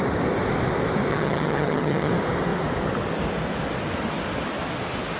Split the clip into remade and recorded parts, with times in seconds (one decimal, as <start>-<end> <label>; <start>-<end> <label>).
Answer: 0.0-1.1 recorded; 1.1-2.1 remade; 2.1-5.2 recorded